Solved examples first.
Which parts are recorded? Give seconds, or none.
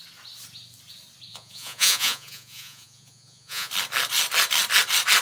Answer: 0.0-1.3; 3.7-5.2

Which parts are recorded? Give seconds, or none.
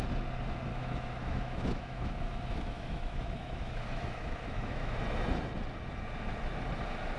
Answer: 0.0-0.7; 5.0-7.2